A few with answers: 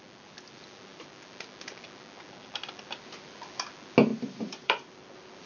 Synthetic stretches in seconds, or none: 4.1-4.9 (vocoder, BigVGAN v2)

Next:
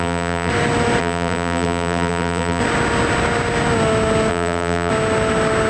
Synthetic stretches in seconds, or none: 0.0-0.5 (vocoder, BigVGAN v2); 1.0-2.6; 4.3-4.9

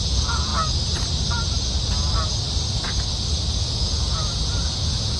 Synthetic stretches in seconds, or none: 0.0-0.5 (vocoder, Vocos); 3.6-5.2

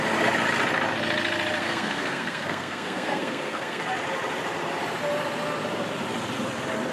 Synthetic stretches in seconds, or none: 1.6-3.8 (codec, SNAC)